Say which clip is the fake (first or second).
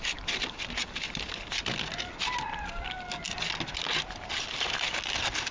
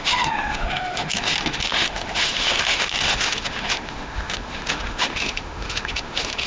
second